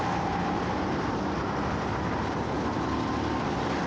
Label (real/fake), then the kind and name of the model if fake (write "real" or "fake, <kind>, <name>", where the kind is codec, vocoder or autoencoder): real